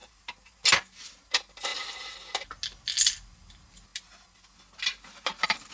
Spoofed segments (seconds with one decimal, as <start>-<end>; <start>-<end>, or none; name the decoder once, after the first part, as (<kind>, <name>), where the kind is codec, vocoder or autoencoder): 0.0-0.6 (vocoder, BigVGAN v2)